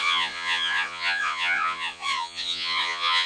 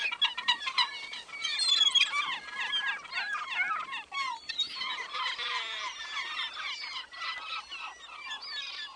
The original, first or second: second